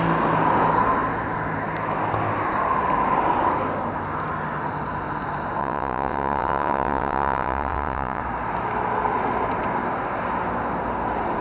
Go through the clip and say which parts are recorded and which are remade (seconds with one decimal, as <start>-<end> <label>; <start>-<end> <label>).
0.0-5.6 recorded; 5.6-8.2 remade; 8.2-11.4 recorded